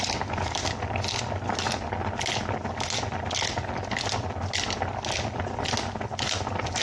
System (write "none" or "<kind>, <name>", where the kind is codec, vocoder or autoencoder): none